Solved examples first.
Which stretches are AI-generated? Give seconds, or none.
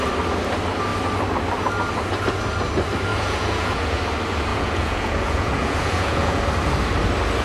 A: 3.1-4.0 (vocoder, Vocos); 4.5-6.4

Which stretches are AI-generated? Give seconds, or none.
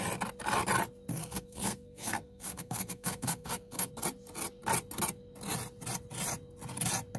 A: 1.1-3.9 (codec, SNAC)